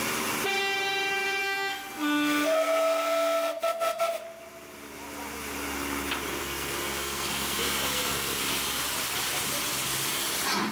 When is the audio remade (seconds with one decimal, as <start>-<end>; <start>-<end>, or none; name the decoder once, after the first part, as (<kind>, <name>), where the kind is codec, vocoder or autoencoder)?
1.4-4.0 (codec, SNAC); 6.4-8.4